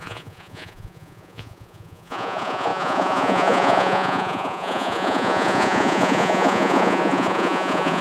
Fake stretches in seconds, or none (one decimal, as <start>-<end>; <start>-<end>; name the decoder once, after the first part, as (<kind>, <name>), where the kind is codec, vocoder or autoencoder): 0.0-8.0 (vocoder, Vocos)